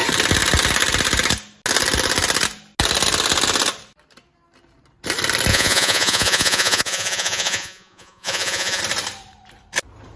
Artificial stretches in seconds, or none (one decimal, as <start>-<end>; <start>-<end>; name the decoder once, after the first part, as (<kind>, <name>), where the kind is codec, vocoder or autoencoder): 5.5-8.8 (vocoder, Vocos)